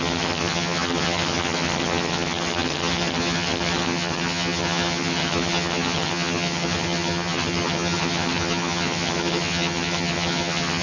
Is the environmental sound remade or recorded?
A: remade